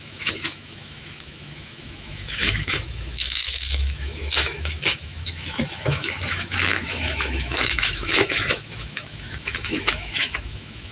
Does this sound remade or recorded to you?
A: remade